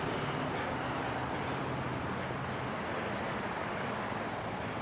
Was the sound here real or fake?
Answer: real